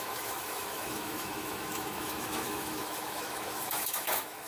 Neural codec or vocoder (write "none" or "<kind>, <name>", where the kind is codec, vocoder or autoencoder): autoencoder, DAC-VAE